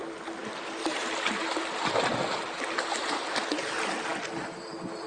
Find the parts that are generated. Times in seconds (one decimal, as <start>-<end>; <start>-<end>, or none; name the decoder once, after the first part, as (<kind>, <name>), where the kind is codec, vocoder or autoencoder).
none